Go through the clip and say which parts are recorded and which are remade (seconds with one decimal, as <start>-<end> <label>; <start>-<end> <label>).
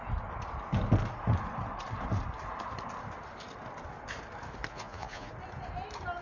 0.0-4.7 recorded; 4.7-5.3 remade; 5.3-6.2 recorded